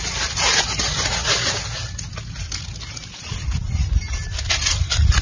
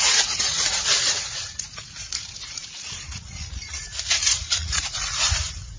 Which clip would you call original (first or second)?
first